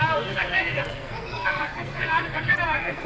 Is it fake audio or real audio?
fake